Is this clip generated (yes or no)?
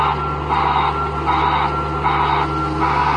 no